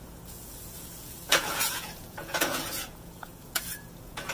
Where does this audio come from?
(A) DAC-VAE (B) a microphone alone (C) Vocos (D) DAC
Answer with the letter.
C